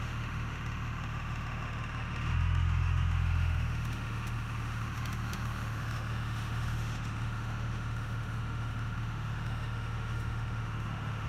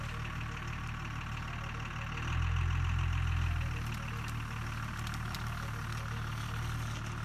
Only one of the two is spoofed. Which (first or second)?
first